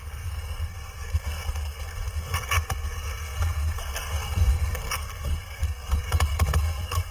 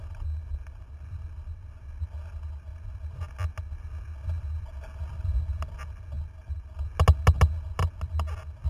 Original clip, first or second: second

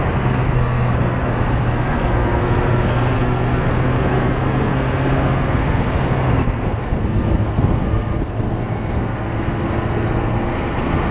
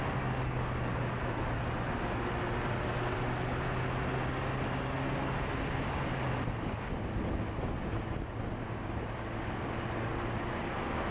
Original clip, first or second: second